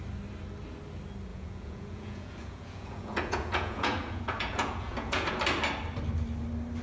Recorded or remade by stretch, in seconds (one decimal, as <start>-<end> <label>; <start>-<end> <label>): 0.0-1.3 recorded; 1.3-5.4 remade; 5.4-6.8 recorded